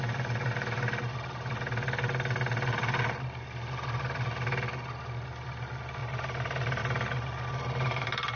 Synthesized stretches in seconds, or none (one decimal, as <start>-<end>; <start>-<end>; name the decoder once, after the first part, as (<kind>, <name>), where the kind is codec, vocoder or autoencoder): none